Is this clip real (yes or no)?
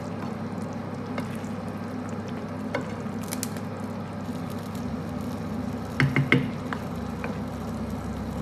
yes